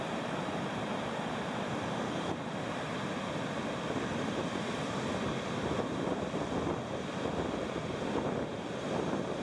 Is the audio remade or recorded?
recorded